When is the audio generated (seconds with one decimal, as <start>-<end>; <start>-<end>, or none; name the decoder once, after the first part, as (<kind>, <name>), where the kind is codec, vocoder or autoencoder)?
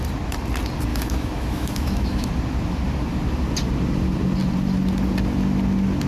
0.9-2.3 (autoencoder, DAC-VAE)